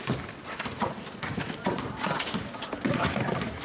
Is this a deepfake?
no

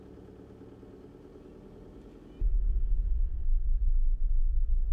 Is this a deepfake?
no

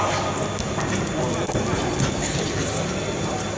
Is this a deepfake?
no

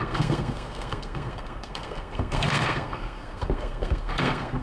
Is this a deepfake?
yes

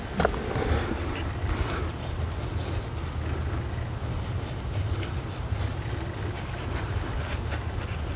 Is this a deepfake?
no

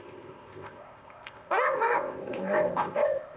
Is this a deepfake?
yes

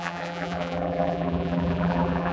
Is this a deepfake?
yes